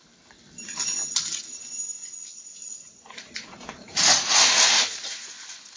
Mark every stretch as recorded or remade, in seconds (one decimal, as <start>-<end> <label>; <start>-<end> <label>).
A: 0.0-2.0 recorded; 2.0-5.8 remade